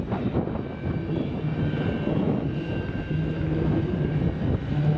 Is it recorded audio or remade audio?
recorded